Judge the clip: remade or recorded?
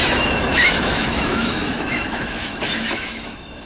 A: remade